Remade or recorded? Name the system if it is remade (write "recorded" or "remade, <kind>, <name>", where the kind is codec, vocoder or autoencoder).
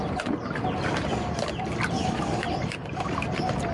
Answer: recorded